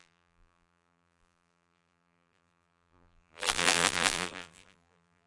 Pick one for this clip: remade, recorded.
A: remade